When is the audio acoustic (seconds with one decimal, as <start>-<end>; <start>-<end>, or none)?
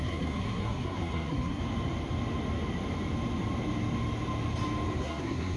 1.6-5.0